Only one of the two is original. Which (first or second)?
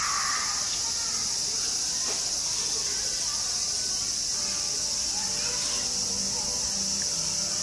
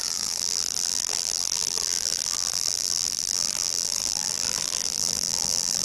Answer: first